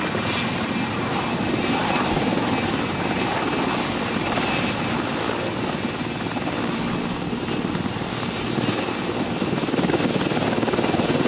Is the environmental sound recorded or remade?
recorded